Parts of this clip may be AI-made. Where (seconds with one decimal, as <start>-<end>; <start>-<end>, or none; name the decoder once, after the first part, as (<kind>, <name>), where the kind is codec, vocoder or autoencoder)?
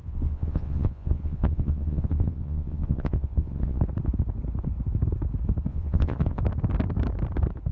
0.0-3.8 (vocoder, Vocos); 5.7-6.4